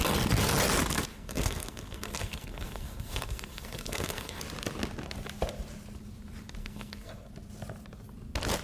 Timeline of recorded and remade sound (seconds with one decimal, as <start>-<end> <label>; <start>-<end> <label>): 0.0-1.1 recorded; 1.1-4.4 remade; 4.4-6.6 recorded; 6.6-7.3 remade; 7.3-8.6 recorded